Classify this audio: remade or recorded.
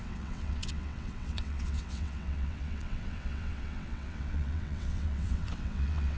remade